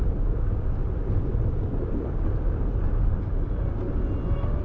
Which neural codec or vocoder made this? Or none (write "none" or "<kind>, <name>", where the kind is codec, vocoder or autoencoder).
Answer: none